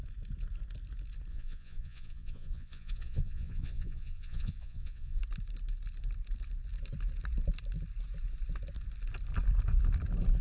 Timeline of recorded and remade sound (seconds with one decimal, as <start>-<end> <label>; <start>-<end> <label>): 0.0-1.3 recorded; 1.3-5.2 remade; 5.2-10.4 recorded